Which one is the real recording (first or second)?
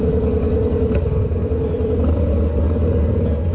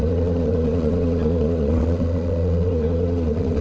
first